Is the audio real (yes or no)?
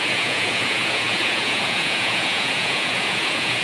no